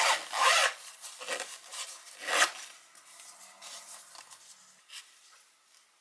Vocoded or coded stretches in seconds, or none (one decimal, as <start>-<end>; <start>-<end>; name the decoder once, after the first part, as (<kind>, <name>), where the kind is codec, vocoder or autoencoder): 0.6-1.1 (vocoder, Vocos)